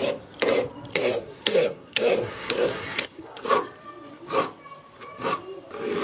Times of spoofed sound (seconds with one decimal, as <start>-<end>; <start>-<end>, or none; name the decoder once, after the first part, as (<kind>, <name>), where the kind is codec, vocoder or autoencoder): 0.9-3.5 (codec, SNAC)